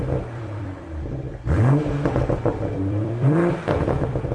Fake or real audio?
fake